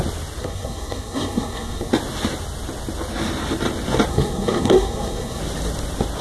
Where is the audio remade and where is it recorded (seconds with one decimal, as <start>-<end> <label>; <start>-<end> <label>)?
0.0-0.4 recorded; 0.4-1.9 remade; 1.9-4.1 recorded; 4.1-5.4 remade; 5.4-6.2 recorded